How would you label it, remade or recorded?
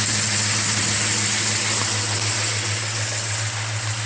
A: recorded